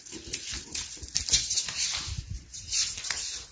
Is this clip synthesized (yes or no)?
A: no